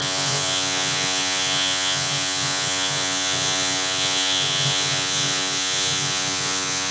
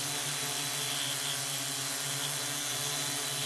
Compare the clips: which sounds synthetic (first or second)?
first